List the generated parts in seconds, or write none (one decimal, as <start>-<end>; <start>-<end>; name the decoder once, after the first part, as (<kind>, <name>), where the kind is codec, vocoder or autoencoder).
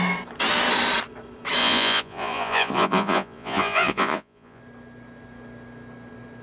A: 1.6-4.6 (vocoder, Vocos)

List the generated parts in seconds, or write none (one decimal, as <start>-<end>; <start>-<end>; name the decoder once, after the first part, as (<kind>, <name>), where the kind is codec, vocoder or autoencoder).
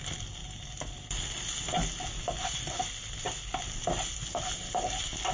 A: none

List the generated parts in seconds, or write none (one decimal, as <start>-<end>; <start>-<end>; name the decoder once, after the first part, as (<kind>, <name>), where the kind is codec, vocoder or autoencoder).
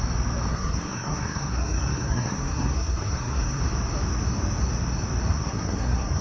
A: 0.5-3.6 (codec, SNAC); 5.3-6.2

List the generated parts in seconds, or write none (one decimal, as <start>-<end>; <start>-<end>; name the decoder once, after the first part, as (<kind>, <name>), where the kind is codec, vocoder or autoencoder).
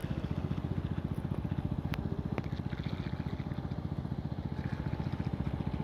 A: none